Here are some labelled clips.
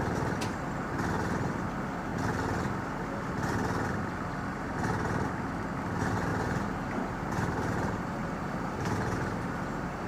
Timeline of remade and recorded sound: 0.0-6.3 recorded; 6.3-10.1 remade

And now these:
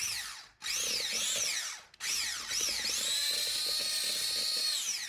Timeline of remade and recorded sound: 0.0-0.6 remade; 0.6-1.7 recorded; 1.7-3.6 remade; 3.6-4.6 recorded; 4.6-5.1 remade

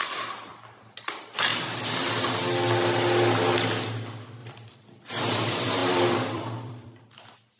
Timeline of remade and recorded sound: 0.0-1.5 recorded; 1.5-2.1 remade; 2.1-4.4 recorded; 4.4-5.2 remade; 5.2-5.8 recorded; 5.8-7.0 remade; 7.0-7.6 recorded

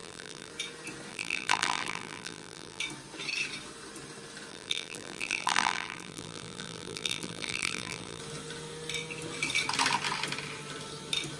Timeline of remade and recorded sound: 0.0-0.5 remade; 0.5-1.1 recorded; 1.1-2.8 remade; 2.8-4.5 recorded; 4.5-8.2 remade; 8.2-11.4 recorded

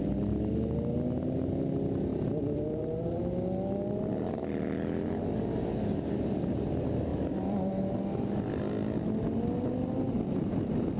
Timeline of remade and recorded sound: 0.0-2.1 recorded; 2.1-3.2 remade; 3.2-7.1 recorded; 7.1-7.7 remade; 7.7-11.0 recorded